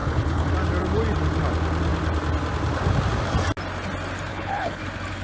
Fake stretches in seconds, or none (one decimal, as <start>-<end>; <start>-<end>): 0.0-0.5; 4.3-4.8